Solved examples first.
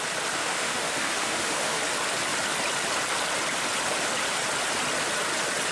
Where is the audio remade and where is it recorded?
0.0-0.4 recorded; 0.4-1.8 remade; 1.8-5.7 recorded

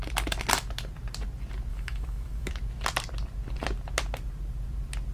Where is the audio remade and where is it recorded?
0.0-1.7 recorded; 1.7-2.5 remade; 2.5-5.1 recorded